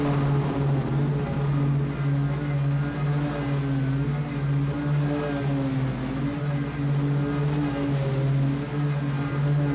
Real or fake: real